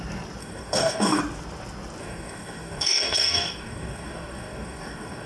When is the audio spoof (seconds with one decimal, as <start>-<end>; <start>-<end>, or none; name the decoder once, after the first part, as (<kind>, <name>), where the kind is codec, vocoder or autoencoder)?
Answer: 0.4-1.2 (codec, DAC); 2.0-5.3